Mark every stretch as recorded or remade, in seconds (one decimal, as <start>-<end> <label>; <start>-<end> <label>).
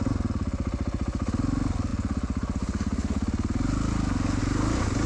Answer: 0.0-5.1 recorded